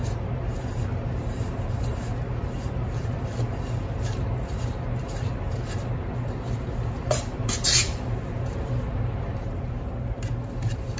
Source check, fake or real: fake